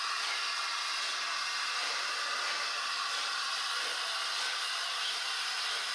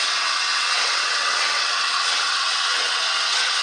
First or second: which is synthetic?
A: second